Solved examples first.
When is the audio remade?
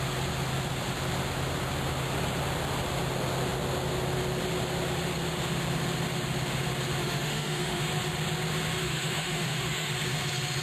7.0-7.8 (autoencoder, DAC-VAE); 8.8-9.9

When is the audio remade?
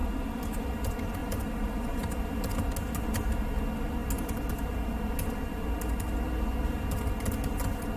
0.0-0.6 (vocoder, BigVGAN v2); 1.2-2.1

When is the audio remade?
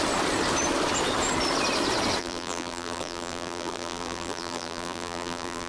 2.2-5.7 (vocoder, BigVGAN v2)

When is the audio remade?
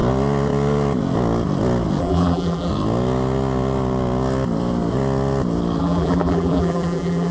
2.0-2.7 (vocoder, BigVGAN v2); 5.8-7.3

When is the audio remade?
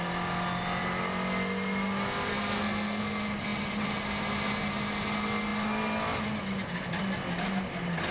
2.3-3.0 (codec, SNAC)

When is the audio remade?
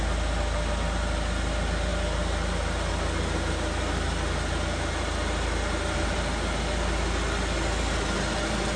none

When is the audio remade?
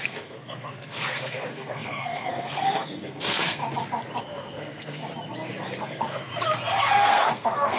0.0-3.6 (codec, SNAC); 4.2-5.0; 5.8-6.2; 6.8-7.8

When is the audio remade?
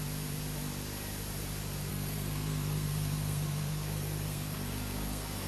1.9-5.5 (codec, SNAC)